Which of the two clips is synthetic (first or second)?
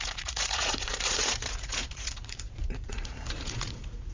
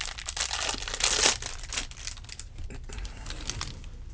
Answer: first